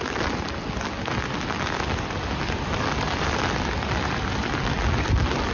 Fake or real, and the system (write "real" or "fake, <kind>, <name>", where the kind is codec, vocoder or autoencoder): real